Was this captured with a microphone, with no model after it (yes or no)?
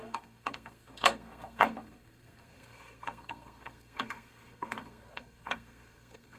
no